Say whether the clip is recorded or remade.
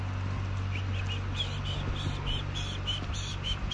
recorded